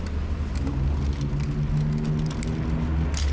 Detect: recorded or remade recorded